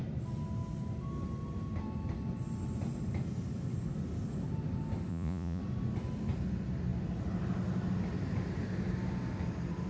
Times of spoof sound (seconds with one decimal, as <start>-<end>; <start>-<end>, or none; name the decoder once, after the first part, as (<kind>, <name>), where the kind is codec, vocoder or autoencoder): 5.1-5.6 (vocoder, Vocos)